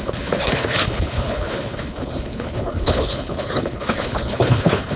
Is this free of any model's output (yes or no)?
no